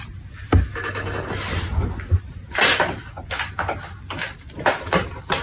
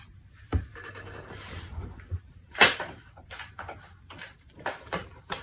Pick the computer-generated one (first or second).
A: second